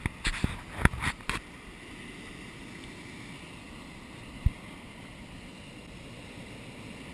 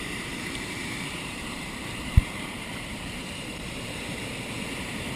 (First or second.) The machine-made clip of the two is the second